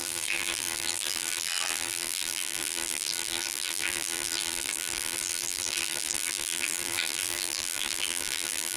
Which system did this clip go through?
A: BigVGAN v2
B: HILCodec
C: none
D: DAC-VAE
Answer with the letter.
A